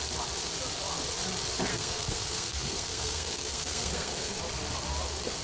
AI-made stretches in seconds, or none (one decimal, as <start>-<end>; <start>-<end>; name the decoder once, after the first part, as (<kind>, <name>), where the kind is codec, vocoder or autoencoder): 1.7-4.4 (codec, SNAC)